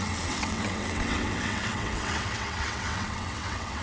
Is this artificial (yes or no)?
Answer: yes